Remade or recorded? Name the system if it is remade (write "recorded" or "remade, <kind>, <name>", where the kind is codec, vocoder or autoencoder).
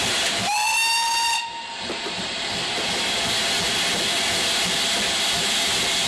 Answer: recorded